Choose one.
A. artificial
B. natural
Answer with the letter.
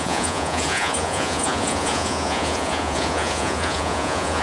A